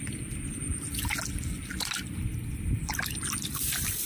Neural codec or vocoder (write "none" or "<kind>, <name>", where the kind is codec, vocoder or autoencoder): none